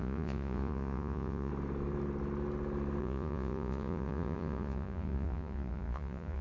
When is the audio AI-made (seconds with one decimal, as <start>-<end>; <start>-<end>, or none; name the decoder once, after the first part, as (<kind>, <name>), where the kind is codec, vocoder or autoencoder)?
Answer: 0.0-1.5 (vocoder, Vocos); 3.0-6.4